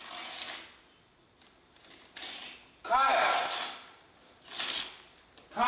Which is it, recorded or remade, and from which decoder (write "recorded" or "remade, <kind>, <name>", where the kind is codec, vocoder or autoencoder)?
recorded